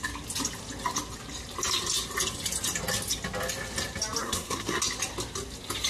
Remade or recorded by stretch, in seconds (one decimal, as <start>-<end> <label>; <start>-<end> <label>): 0.0-4.2 recorded; 4.2-4.8 remade; 4.8-5.9 recorded